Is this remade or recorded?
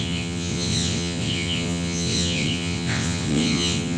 remade